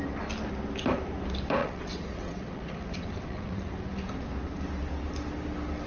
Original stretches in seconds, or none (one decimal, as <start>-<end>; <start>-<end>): 0.0-1.6; 3.7-5.9